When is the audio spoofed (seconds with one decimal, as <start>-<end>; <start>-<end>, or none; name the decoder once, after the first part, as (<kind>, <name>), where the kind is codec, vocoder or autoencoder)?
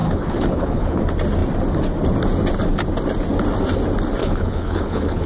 0.0-1.0 (codec, HILCodec); 4.2-5.3